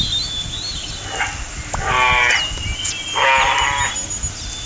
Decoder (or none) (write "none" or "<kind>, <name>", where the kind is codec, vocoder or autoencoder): none